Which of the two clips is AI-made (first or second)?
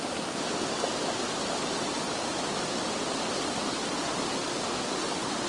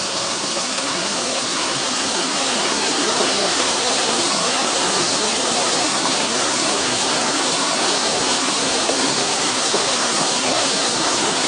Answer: second